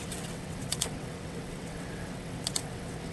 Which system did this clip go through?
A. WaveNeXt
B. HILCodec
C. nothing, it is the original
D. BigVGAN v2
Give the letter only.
A